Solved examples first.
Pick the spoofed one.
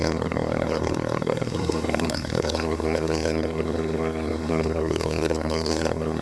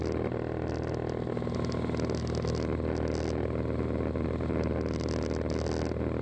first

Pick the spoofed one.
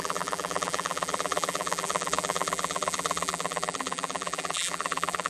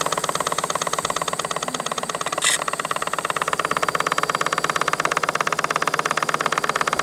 first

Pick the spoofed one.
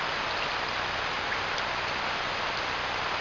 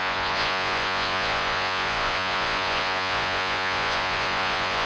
second